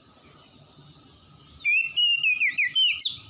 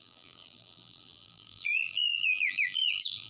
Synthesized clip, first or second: second